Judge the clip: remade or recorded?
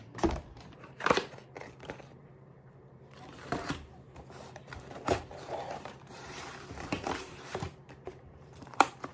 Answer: remade